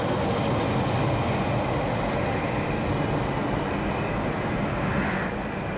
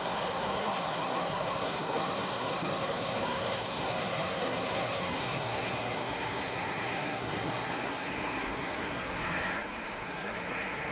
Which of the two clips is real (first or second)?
first